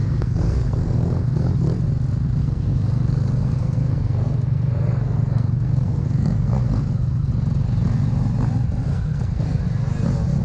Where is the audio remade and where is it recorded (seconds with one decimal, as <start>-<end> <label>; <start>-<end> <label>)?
0.0-1.5 remade; 1.5-2.4 recorded; 2.4-7.3 remade; 7.3-8.9 recorded; 8.9-9.6 remade; 9.6-10.4 recorded